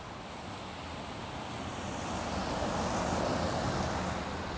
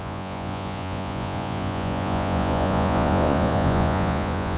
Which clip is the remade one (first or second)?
second